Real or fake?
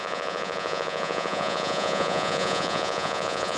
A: fake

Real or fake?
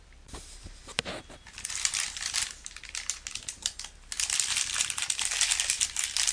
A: real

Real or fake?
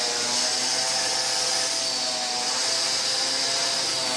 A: real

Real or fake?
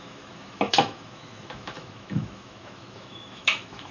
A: fake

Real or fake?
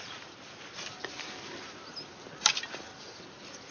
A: real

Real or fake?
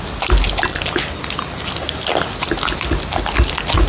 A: real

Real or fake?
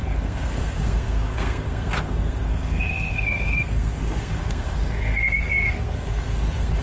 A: fake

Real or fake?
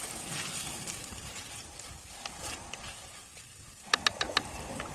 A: fake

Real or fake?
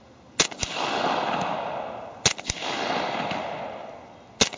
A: real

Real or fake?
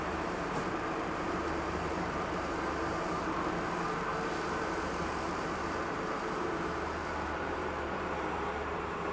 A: fake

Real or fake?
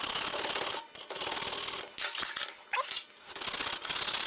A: real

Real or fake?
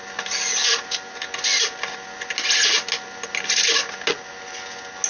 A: real